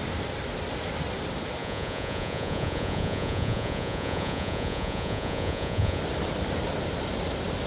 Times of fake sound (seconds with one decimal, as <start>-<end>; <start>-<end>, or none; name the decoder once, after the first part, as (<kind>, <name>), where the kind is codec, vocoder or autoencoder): 1.6-6.0 (vocoder, Vocos)

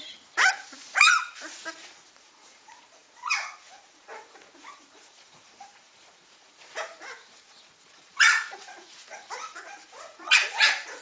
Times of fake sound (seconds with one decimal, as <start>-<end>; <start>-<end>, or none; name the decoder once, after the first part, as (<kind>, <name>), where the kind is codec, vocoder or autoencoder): 0.0-11.0 (vocoder, Vocos)

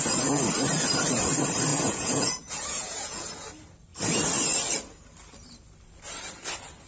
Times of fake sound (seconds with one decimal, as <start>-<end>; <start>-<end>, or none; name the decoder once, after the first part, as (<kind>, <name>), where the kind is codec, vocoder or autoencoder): 1.7-3.3 (vocoder, Vocos)

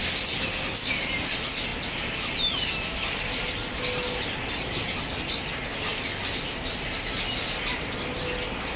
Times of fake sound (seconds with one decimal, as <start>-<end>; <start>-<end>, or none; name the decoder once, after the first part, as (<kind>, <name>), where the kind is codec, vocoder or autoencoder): none

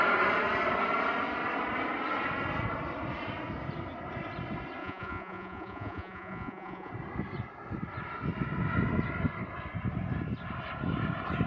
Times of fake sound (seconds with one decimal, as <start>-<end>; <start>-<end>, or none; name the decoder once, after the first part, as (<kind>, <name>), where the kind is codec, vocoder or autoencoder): 4.8-6.9 (vocoder, Vocos)